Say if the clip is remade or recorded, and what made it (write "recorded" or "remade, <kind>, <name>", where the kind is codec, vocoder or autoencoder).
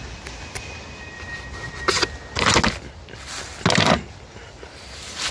recorded